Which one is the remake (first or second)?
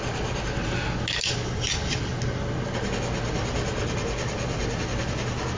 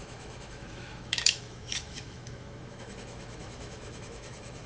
second